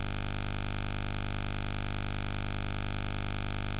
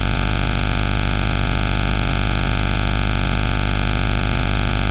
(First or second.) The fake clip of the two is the second